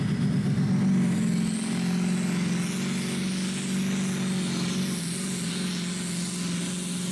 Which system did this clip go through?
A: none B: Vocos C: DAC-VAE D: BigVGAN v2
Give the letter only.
A